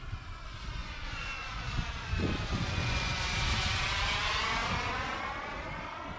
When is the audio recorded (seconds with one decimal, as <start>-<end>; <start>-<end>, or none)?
0.0-0.8; 3.3-6.2